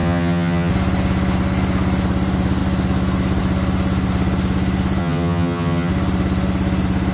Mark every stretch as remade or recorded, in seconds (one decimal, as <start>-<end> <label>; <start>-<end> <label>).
0.0-0.7 remade; 0.7-5.0 recorded; 5.0-5.9 remade; 5.9-7.1 recorded